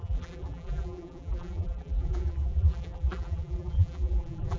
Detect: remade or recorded remade